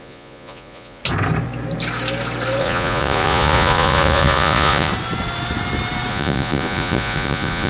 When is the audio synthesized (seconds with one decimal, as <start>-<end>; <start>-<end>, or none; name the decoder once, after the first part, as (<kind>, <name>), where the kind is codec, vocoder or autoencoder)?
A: 0.0-1.0 (vocoder, Vocos); 2.6-4.9; 6.1-7.7